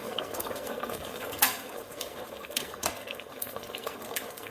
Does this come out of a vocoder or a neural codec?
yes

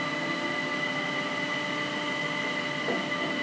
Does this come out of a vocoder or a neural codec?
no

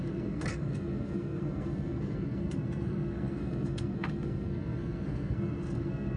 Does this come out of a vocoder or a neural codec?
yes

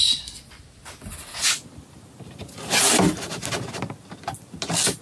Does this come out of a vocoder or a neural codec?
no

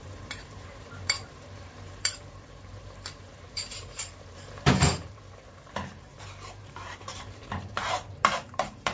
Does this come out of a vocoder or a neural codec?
yes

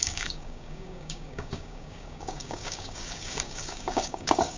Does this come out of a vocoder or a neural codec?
yes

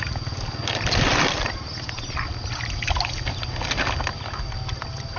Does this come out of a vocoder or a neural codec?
no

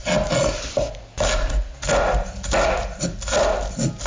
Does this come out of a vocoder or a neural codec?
no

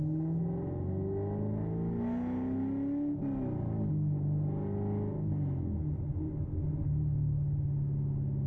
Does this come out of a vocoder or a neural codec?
no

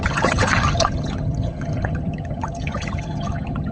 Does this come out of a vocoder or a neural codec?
yes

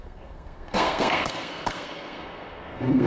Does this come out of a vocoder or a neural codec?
yes